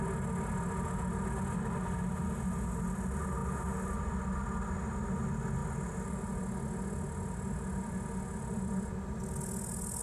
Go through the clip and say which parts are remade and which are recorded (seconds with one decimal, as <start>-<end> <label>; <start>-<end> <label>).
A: 0.0-10.0 recorded